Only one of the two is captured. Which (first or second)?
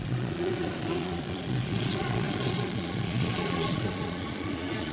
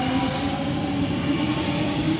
second